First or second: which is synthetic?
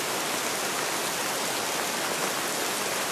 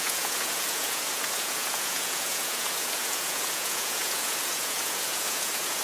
second